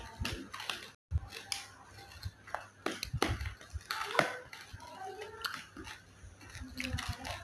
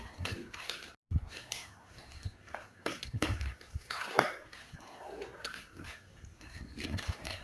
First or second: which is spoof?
second